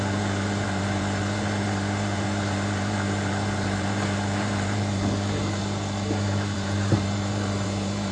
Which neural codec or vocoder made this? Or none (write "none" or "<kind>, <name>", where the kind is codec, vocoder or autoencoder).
vocoder, BigVGAN v2